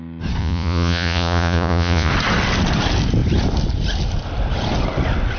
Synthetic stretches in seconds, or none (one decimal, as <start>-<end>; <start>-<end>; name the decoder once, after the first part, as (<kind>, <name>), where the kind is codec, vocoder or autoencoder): 0.4-2.1 (vocoder, Vocos)

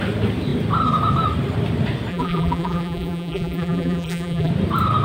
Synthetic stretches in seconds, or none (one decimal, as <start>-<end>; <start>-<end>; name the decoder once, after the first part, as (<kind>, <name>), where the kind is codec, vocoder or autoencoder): 2.1-4.5 (vocoder, BigVGAN v2)

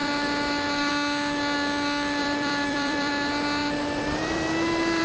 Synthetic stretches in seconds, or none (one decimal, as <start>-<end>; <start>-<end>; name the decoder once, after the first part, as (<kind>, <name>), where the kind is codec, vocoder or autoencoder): 0.0-0.9 (vocoder, BigVGAN v2); 2.2-3.1; 3.6-5.0

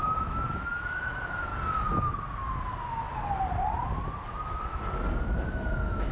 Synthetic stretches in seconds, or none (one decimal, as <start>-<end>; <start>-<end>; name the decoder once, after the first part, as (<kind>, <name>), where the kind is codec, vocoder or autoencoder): 0.0-1.5 (autoencoder, DAC-VAE); 5.2-6.1

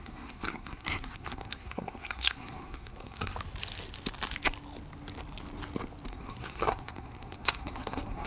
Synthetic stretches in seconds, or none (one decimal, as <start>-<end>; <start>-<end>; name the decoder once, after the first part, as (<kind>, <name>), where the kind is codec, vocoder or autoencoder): 0.0-3.3 (codec, SNAC); 6.1-8.3

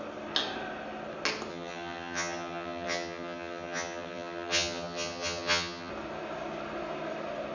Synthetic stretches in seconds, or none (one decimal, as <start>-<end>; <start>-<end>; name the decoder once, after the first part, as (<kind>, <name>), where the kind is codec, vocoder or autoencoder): 1.5-5.9 (vocoder, HiFi-GAN)